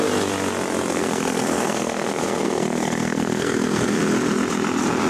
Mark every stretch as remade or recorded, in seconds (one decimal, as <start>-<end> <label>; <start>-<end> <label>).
0.0-0.9 recorded; 0.9-4.0 remade; 4.0-5.1 recorded